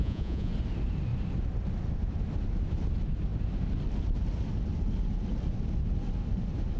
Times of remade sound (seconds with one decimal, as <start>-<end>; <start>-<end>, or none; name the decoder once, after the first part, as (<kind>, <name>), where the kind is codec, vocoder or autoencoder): 0.0-0.5 (vocoder, Vocos)